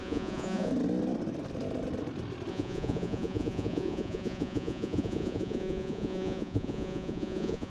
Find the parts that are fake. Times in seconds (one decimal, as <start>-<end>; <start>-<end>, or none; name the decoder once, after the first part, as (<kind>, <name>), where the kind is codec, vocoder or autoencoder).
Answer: 0.0-0.7 (vocoder, Vocos); 2.5-7.7